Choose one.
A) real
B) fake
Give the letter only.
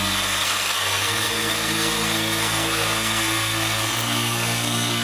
B